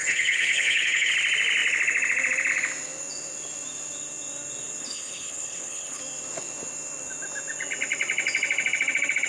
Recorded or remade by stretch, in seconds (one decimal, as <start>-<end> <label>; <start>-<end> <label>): 0.0-1.1 remade; 1.1-4.8 recorded; 4.8-6.0 remade; 6.0-9.3 recorded